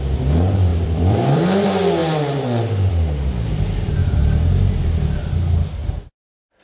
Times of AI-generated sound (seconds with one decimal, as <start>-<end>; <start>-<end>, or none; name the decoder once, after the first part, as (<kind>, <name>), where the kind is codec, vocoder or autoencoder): 0.7-1.4 (vocoder, BigVGAN v2); 2.0-2.9; 4.0-5.2